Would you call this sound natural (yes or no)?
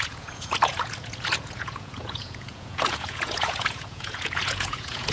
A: no